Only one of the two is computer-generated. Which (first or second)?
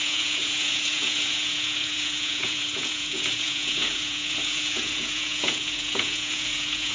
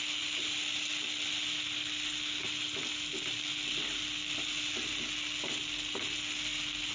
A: first